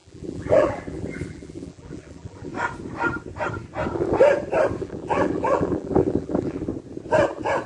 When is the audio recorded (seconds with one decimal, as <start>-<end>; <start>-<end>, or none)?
2.5-4.8; 6.7-7.7